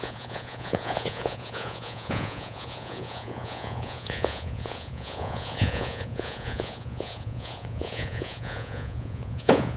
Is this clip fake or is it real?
fake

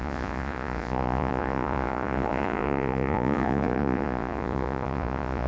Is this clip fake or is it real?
fake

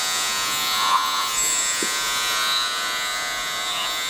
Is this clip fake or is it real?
fake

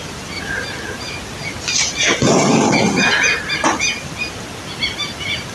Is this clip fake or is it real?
real